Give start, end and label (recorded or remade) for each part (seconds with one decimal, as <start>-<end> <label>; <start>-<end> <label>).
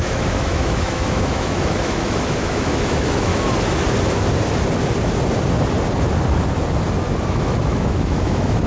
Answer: 0.0-3.3 remade; 3.3-7.3 recorded; 7.3-8.7 remade